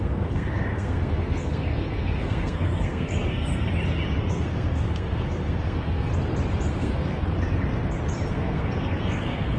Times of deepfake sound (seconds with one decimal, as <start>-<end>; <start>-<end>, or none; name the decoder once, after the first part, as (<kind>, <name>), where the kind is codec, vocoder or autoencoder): 0.0-3.7 (codec, SNAC); 4.2-6.1; 6.7-7.2; 8.3-9.6